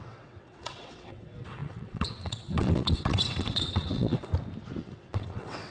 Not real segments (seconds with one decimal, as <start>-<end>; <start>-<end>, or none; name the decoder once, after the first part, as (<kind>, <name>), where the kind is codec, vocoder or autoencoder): 0.0-4.3 (vocoder, WaveNeXt); 4.8-5.7

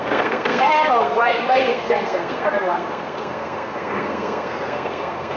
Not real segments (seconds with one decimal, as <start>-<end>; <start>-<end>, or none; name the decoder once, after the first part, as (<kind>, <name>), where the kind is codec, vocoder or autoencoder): 0.0-5.4 (codec, SNAC)

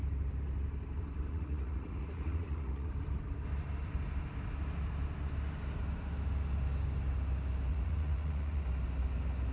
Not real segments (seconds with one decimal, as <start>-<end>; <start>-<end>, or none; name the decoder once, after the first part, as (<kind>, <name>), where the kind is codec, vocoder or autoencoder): 1.3-2.9 (vocoder, Vocos); 7.7-8.6

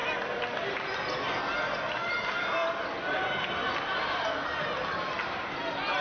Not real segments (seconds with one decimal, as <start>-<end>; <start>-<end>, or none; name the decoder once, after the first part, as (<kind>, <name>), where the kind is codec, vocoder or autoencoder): none

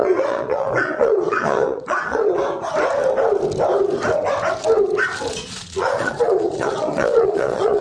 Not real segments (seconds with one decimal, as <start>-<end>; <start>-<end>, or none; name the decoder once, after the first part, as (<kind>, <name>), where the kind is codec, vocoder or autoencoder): 0.0-2.4 (vocoder, Vocos); 5.3-7.8

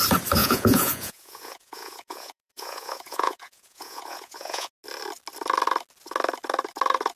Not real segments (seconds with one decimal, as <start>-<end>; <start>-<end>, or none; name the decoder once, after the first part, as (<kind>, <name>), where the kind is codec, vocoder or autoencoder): 0.4-4.7 (vocoder, Vocos)

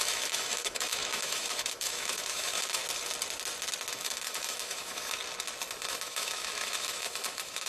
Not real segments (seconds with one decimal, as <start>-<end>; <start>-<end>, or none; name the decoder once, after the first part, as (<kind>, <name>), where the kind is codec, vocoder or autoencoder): 0.0-2.8 (autoencoder, DAC-VAE); 3.9-5.2; 5.8-7.7